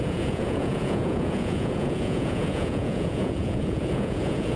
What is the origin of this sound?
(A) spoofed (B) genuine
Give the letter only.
A